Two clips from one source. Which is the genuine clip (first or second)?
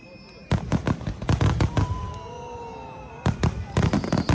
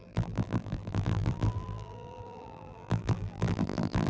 first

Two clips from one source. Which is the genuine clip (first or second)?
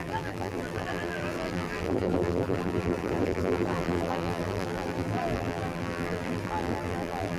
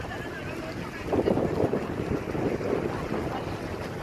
second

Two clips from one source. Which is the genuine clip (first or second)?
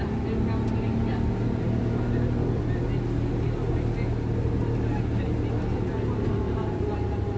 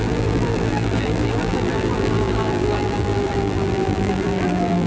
first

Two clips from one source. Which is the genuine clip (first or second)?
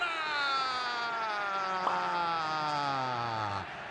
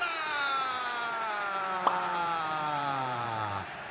first